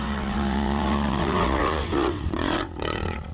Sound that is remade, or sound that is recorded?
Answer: remade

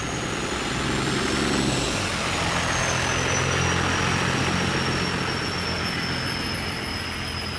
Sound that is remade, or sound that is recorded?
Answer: recorded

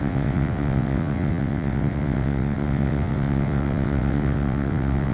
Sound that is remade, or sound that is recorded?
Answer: remade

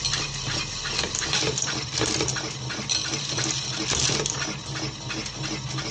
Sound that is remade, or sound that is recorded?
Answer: recorded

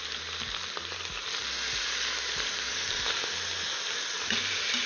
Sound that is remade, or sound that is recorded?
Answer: recorded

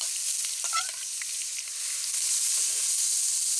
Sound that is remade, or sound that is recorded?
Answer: recorded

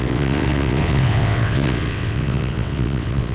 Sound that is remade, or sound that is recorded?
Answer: remade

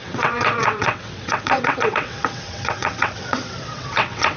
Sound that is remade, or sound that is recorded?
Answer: remade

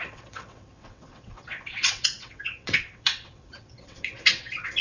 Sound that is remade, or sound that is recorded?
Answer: remade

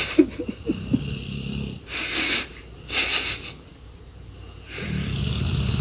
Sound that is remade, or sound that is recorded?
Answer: recorded